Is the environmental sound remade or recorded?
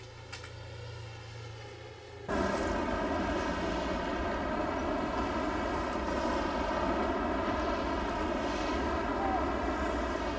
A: recorded